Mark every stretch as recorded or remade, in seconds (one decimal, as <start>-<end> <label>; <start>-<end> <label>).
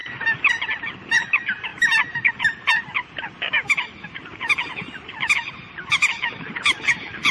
0.0-7.3 recorded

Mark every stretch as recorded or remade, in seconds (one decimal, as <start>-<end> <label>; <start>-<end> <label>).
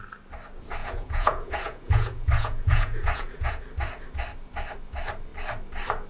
0.0-0.8 recorded; 0.8-3.5 remade; 3.5-6.1 recorded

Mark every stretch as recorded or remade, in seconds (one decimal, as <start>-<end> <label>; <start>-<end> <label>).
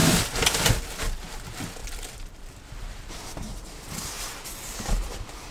0.0-0.7 remade; 0.7-1.8 recorded; 1.8-5.1 remade; 5.1-5.5 recorded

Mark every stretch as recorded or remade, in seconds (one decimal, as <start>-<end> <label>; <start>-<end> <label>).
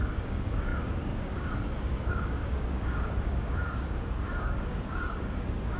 0.0-5.8 remade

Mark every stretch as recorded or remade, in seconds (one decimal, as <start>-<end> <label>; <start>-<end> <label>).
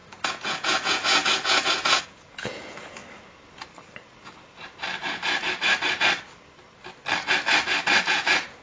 0.0-3.0 remade; 3.0-8.0 recorded; 8.0-8.6 remade